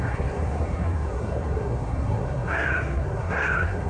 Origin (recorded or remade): remade